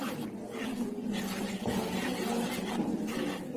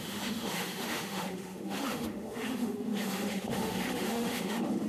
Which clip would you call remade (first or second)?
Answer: second